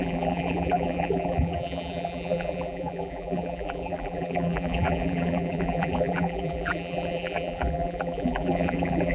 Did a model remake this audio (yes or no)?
yes